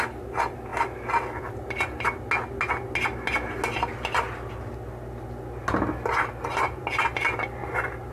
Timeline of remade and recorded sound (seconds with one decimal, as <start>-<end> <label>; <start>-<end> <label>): 0.0-8.1 recorded